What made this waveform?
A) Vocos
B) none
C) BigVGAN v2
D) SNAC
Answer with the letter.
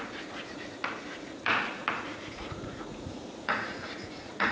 A